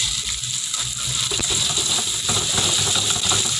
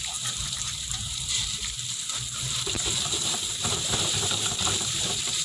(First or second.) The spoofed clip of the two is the second